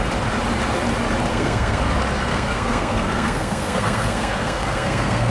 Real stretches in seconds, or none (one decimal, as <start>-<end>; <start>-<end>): 0.0-1.3; 1.8-2.3